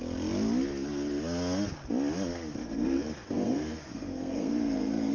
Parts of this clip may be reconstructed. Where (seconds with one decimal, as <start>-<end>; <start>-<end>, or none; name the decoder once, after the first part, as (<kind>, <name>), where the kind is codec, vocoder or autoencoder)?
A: 2.6-5.1 (codec, SNAC)